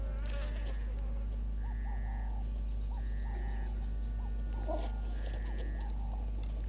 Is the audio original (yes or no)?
yes